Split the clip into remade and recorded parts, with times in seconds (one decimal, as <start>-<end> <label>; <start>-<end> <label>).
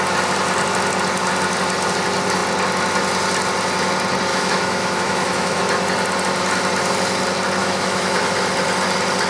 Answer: 0.0-4.3 recorded; 4.3-5.6 remade; 5.6-7.6 recorded; 7.6-8.2 remade; 8.2-9.3 recorded